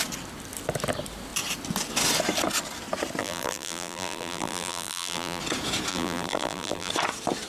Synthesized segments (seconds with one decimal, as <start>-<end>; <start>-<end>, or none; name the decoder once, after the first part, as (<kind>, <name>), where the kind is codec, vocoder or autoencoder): 3.2-5.4 (vocoder, BigVGAN v2); 5.9-6.9